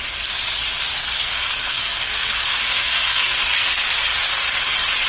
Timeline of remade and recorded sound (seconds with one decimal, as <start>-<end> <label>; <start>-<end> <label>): 0.0-1.0 recorded; 1.0-4.1 remade; 4.1-5.1 recorded